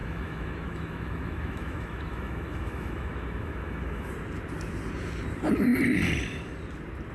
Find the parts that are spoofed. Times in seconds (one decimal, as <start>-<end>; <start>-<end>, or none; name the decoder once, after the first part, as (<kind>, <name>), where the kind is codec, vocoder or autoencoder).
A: 0.0-4.1 (autoencoder, DAC-VAE)

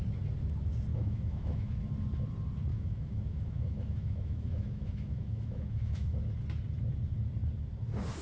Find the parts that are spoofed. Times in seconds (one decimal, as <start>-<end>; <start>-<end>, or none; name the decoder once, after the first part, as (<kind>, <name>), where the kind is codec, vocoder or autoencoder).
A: 0.9-1.8 (autoencoder, DAC-VAE); 2.7-6.2

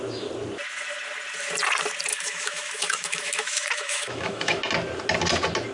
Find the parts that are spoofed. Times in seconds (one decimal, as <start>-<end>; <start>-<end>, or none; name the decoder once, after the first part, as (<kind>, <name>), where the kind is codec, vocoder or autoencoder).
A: 2.1-4.6 (autoencoder, DAC-VAE)

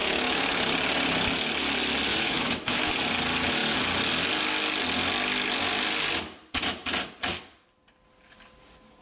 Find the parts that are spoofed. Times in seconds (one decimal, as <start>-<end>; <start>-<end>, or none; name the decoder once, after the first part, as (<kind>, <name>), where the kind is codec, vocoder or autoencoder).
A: 0.0-0.6 (autoencoder, DAC-VAE); 2.1-2.9

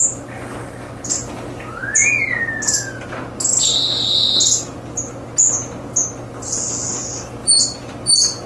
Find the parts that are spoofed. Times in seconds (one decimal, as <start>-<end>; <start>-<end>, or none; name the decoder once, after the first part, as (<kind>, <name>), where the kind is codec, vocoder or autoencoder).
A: none

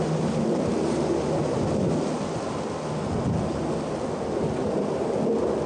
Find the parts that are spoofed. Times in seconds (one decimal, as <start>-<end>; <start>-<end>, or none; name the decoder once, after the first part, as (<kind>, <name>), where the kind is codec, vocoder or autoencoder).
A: none

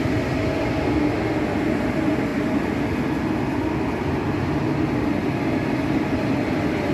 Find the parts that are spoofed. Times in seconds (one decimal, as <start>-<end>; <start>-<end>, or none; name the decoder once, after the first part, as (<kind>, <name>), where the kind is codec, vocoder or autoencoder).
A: none